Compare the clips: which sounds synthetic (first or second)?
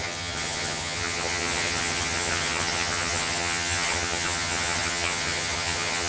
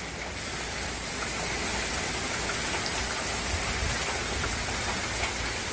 first